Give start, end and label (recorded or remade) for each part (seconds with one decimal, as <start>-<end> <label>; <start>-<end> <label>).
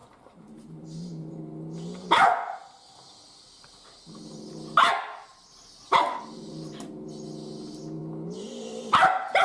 0.0-1.4 remade; 1.4-5.3 recorded; 5.3-6.9 remade; 6.9-9.4 recorded